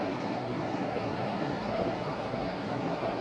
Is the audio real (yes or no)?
no